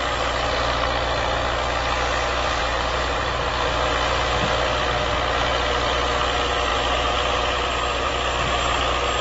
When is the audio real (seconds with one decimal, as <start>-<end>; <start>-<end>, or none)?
0.0-2.6; 3.5-6.7; 8.1-9.2